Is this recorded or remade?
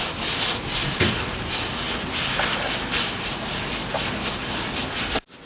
recorded